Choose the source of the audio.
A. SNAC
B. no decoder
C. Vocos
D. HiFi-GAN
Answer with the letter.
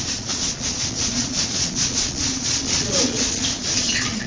C